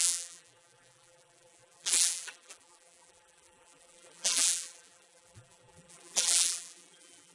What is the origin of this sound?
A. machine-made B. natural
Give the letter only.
A